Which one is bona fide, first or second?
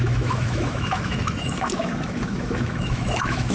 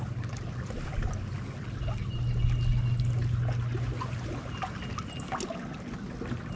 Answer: second